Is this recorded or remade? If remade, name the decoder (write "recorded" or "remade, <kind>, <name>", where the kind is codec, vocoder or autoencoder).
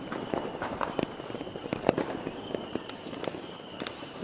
remade, vocoder, BigVGAN v2